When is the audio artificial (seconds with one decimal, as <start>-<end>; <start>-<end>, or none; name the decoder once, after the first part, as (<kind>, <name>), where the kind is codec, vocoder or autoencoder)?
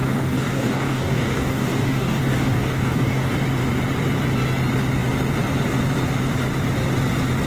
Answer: 0.0-3.3 (codec, DAC)